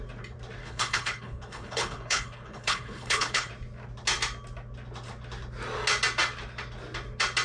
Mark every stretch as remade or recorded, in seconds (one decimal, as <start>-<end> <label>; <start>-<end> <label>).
0.0-0.6 recorded; 0.6-3.5 remade; 3.5-7.4 recorded